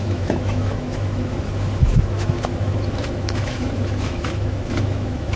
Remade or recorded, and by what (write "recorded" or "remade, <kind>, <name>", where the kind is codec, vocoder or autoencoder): remade, autoencoder, DAC-VAE